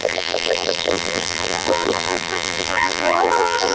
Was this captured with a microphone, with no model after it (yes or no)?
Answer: no